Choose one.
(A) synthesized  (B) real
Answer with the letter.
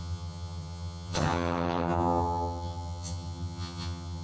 A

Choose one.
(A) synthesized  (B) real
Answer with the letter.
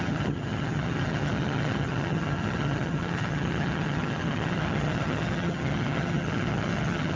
A